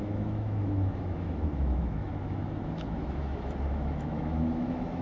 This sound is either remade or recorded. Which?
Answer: remade